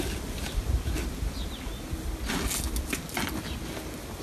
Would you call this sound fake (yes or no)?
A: no